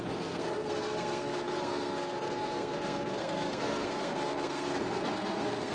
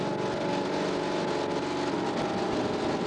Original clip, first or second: second